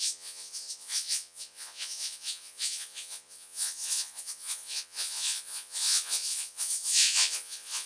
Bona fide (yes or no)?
no